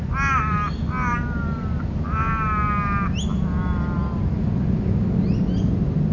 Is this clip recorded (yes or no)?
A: yes